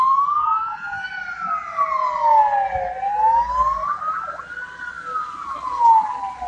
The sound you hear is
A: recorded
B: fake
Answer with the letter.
A